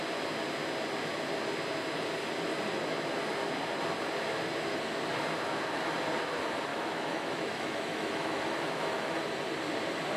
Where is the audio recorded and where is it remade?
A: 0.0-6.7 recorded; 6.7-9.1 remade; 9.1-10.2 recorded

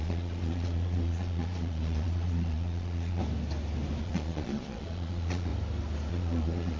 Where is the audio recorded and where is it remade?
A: 0.0-3.2 remade; 3.2-4.0 recorded; 4.0-5.5 remade; 5.5-6.1 recorded; 6.1-6.8 remade

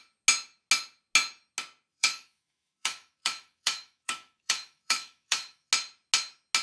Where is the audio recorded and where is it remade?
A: 0.0-1.9 recorded; 1.9-5.7 remade; 5.7-6.6 recorded

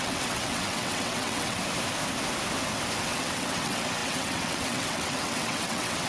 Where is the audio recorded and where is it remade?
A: 0.0-1.6 remade; 1.6-3.0 recorded; 3.0-6.1 remade

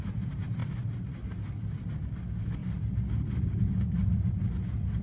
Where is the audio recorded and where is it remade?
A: 0.0-5.0 recorded

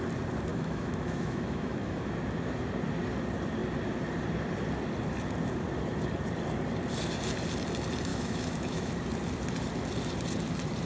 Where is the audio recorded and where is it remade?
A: 0.0-0.5 recorded; 0.5-2.0 remade; 2.0-8.1 recorded; 8.1-8.9 remade; 8.9-10.9 recorded